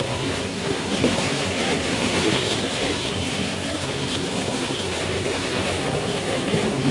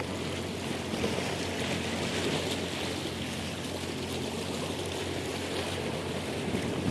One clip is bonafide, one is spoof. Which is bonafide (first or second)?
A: second